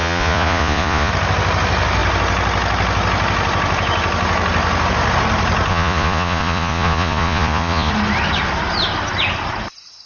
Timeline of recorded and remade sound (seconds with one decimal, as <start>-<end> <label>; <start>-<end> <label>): 0.0-1.1 remade; 1.1-5.7 recorded; 5.7-7.9 remade; 7.9-10.1 recorded